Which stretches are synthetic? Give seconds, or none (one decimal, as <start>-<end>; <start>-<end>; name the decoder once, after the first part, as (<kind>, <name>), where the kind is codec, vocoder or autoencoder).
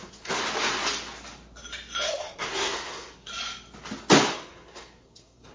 0.0-0.4 (codec, SNAC); 2.1-3.3; 4.3-5.5